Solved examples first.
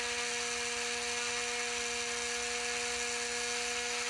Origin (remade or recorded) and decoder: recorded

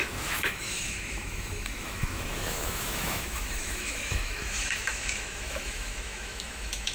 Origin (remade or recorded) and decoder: remade, autoencoder, DAC-VAE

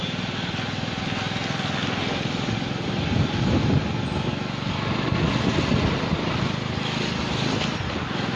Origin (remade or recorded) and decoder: recorded